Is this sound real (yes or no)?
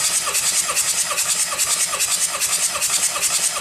yes